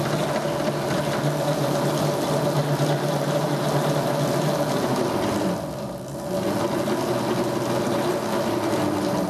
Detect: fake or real real